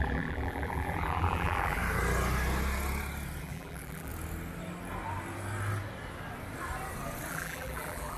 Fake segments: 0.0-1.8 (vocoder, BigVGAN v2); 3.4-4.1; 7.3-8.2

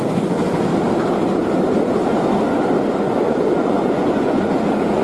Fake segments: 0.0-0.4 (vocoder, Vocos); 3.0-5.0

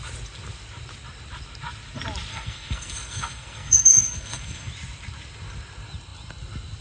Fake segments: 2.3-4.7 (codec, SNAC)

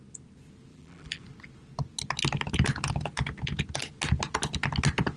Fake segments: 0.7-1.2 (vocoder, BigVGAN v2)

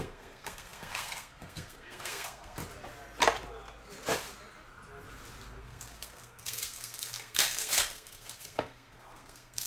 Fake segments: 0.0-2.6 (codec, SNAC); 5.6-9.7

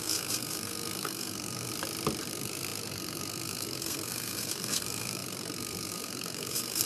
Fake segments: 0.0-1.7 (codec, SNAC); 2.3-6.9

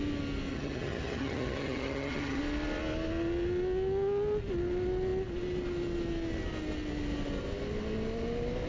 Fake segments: 0.5-2.4 (vocoder, HiFi-GAN)